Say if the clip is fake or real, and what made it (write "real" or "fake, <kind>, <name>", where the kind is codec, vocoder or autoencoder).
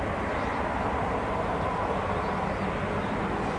real